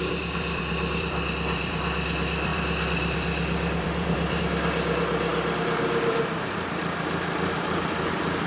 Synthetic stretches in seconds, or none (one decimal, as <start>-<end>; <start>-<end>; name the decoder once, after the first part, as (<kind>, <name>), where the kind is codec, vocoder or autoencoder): 0.0-8.5 (vocoder, BigVGAN v2)